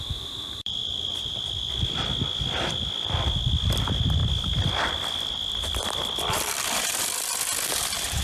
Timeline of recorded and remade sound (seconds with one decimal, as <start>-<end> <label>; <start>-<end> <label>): 0.0-8.2 remade